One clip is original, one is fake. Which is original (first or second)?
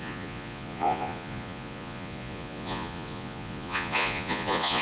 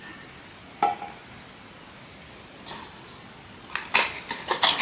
second